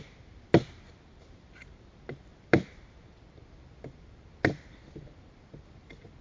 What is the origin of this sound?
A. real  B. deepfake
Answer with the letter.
A